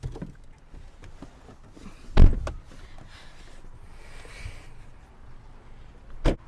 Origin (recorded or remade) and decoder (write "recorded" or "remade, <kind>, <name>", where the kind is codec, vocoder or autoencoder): recorded